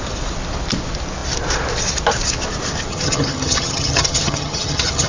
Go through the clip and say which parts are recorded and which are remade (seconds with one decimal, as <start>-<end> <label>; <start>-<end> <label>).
0.0-2.9 recorded; 2.9-5.1 remade

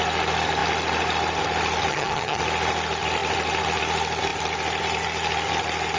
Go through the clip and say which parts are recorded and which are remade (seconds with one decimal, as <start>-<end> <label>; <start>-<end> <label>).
0.0-1.9 recorded; 1.9-2.4 remade; 2.4-6.0 recorded

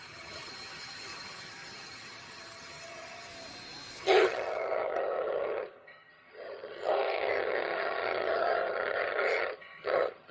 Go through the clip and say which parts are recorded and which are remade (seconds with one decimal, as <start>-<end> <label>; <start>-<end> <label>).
0.0-3.3 remade; 3.3-4.0 recorded; 4.0-10.3 remade